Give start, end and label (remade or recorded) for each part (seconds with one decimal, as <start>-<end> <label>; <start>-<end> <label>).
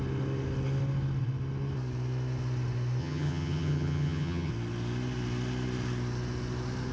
0.0-3.0 recorded; 3.0-4.5 remade; 4.5-6.9 recorded